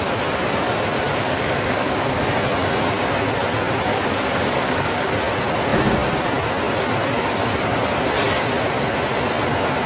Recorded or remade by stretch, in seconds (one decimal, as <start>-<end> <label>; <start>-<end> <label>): 0.0-1.1 recorded; 1.1-2.3 remade; 2.3-3.9 recorded; 3.9-5.1 remade; 5.1-9.9 recorded